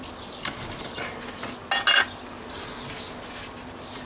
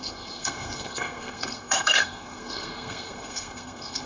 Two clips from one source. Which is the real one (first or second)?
first